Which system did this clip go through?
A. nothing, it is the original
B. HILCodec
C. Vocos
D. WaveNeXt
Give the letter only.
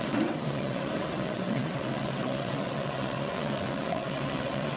D